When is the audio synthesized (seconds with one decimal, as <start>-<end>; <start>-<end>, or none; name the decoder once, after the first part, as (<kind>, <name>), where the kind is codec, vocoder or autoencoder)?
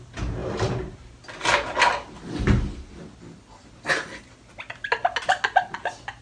none